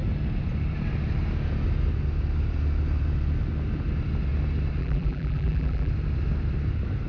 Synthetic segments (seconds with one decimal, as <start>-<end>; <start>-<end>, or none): 4.8-5.9

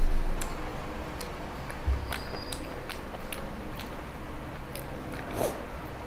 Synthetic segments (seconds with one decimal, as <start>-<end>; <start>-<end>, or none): 0.7-1.2

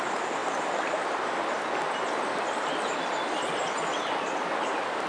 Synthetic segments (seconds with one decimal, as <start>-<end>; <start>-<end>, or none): none